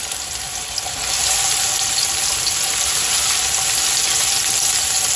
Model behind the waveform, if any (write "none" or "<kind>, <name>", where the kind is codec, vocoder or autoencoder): none